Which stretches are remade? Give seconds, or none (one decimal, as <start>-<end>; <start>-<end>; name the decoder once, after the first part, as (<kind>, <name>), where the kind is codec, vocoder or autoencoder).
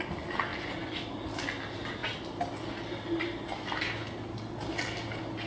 none